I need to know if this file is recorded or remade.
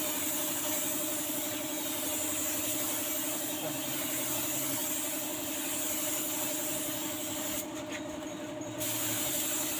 recorded